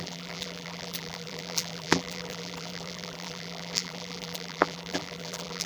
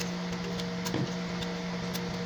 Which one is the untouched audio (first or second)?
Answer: second